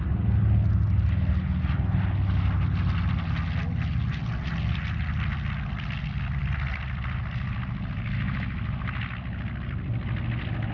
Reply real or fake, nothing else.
real